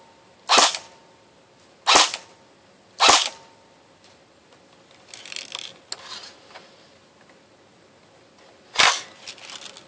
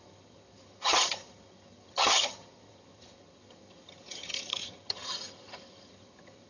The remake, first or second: second